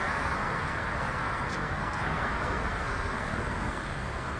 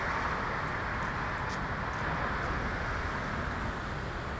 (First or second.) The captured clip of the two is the second